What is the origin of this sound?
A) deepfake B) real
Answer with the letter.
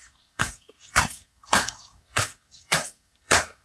A